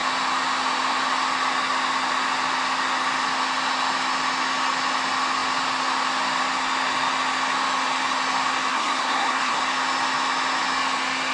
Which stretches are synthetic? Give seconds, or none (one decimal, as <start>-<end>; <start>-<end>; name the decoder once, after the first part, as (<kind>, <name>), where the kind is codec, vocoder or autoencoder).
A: 8.7-9.6 (codec, SNAC)